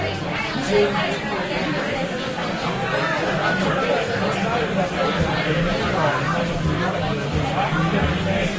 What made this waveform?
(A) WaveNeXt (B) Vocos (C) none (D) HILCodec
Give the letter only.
C